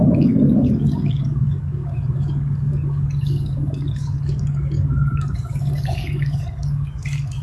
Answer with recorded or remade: remade